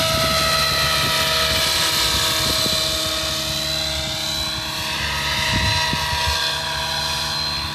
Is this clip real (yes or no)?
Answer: yes